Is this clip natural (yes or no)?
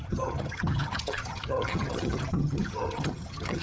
no